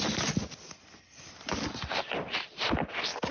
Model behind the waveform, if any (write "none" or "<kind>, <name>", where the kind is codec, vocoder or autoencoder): none